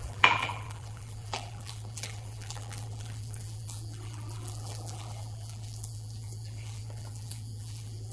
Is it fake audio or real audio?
fake